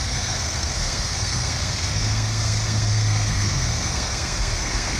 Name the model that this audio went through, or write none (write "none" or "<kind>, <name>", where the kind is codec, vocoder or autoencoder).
codec, SNAC